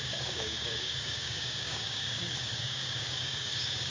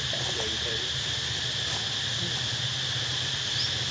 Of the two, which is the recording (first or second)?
second